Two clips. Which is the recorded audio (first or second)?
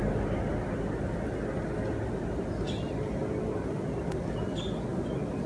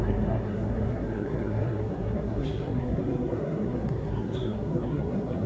first